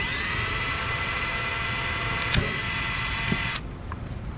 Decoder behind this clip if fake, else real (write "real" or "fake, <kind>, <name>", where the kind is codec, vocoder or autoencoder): real